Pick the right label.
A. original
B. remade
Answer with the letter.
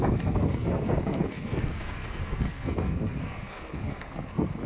B